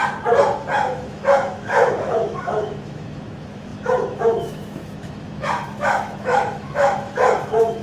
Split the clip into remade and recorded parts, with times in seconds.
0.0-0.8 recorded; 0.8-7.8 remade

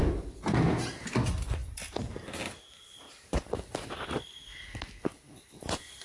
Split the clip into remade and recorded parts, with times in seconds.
0.0-6.0 recorded

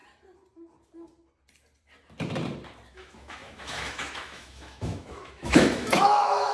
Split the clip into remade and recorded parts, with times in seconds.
0.0-2.9 recorded; 2.9-6.5 remade

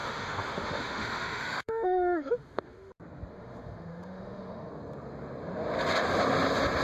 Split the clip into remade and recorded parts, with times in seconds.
0.0-2.9 remade; 2.9-3.3 recorded; 3.3-4.7 remade; 4.7-6.8 recorded

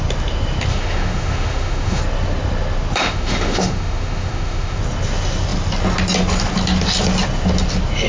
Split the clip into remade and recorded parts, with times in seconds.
0.0-0.7 recorded; 0.7-2.0 remade; 2.0-3.0 recorded; 3.0-4.8 remade; 4.8-8.1 recorded

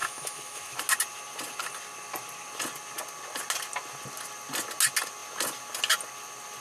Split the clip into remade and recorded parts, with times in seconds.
0.0-0.8 remade; 0.8-6.6 recorded

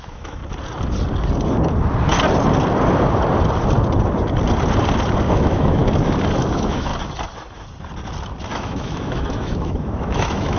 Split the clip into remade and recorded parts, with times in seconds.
0.0-0.4 remade; 0.4-5.3 recorded; 5.3-5.8 remade; 5.8-6.4 recorded; 6.4-6.9 remade; 6.9-8.5 recorded; 8.5-10.6 remade

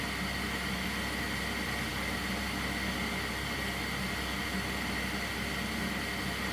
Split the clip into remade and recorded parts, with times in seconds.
0.0-6.5 recorded